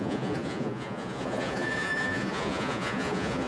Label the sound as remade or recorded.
remade